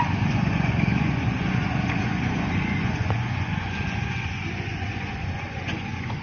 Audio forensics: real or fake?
fake